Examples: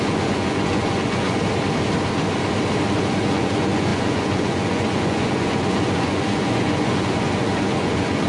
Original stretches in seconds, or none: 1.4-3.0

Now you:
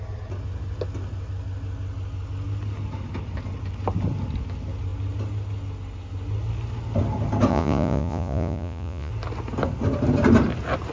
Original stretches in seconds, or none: 0.0-7.5; 9.1-10.9

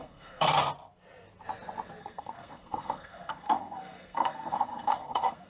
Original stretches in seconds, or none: 0.6-2.0

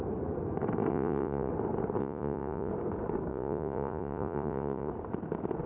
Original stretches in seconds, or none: 0.0-0.9; 1.5-2.0; 2.7-3.3; 4.9-5.7